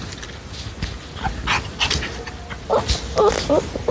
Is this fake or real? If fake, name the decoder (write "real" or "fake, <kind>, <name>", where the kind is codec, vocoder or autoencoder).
real